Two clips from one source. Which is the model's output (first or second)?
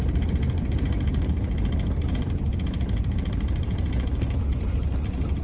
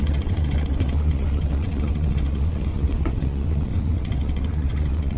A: second